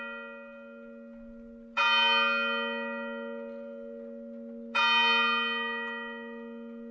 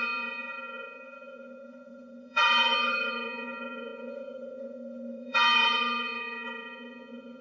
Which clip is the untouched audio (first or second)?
first